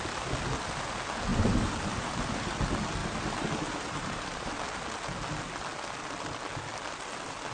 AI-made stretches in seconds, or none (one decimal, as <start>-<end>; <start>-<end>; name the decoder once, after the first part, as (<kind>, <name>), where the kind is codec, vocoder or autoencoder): 1.3-2.5 (vocoder, BigVGAN v2); 3.0-4.5